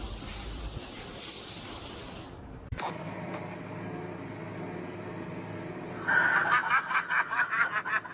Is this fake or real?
real